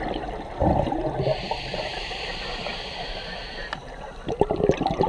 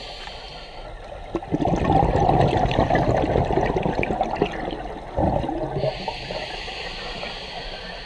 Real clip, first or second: second